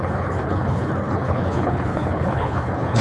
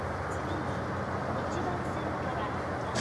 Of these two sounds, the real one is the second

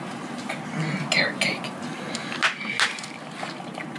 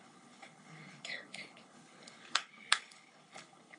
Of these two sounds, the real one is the first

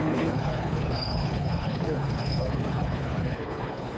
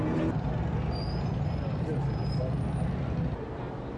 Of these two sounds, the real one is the second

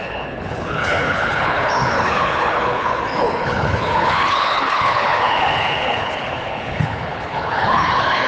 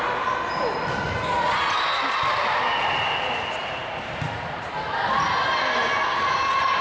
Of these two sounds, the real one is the second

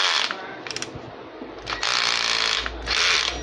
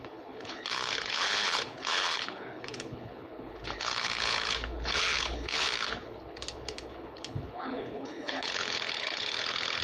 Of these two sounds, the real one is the first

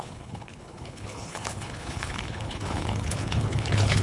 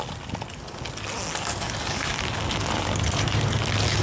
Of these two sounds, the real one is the second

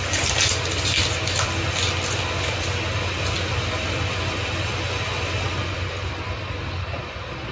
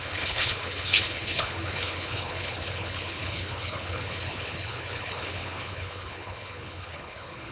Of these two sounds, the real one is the first